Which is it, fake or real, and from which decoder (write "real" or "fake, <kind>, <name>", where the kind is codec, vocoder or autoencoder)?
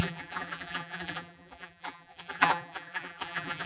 fake, vocoder, BigVGAN v2